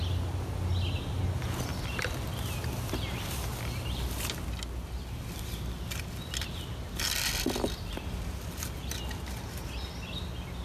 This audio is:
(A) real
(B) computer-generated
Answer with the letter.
A